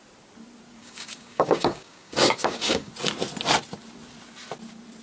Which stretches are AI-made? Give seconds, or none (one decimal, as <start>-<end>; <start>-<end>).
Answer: 0.8-2.9